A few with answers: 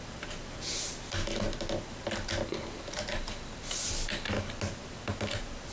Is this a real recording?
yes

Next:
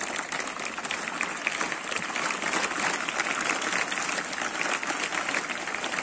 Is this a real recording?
yes